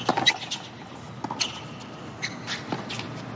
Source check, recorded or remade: recorded